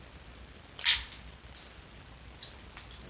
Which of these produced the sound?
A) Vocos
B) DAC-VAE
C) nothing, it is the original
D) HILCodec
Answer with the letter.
C